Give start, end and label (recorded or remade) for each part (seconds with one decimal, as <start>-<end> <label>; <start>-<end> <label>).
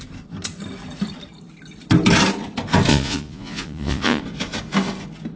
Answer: 0.0-2.9 recorded; 2.9-4.2 remade; 4.2-5.4 recorded